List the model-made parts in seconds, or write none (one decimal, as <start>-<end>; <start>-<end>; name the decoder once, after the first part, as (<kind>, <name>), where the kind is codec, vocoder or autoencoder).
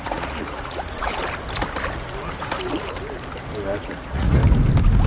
0.0-1.1 (vocoder, Vocos); 3.8-4.4